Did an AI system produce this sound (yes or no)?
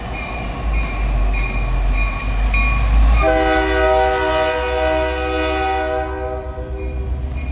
no